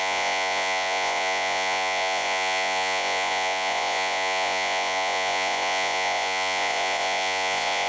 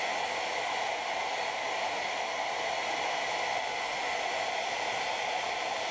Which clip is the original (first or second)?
second